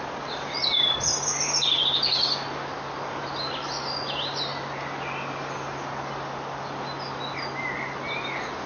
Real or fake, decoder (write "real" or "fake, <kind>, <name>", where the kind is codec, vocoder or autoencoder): real